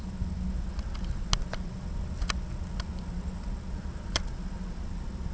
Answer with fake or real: real